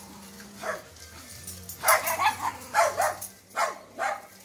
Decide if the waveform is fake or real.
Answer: real